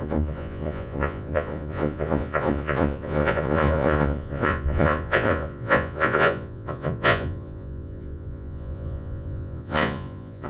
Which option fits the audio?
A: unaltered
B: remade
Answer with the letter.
B